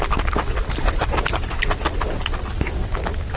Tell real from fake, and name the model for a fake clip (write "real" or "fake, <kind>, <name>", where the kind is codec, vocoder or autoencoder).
real